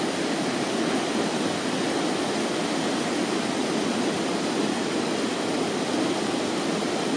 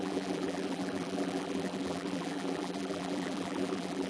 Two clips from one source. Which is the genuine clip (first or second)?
first